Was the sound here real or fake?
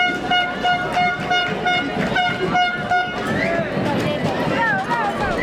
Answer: real